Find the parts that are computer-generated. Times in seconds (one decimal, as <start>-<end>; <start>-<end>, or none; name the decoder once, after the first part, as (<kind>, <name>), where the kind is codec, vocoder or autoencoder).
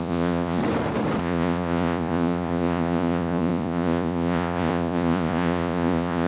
0.0-0.6 (vocoder, Vocos); 1.2-6.3